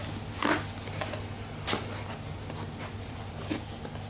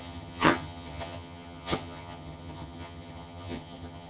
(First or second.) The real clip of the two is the first